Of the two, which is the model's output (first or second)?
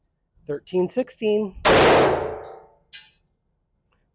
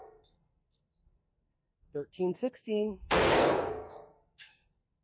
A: second